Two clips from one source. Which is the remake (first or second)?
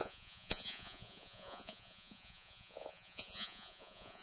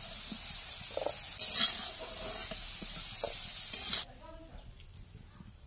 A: first